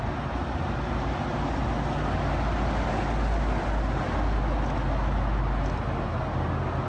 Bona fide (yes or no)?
yes